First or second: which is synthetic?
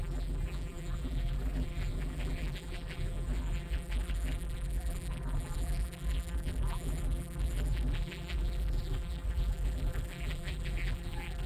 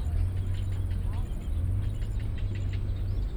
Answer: first